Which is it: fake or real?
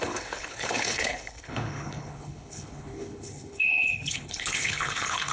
fake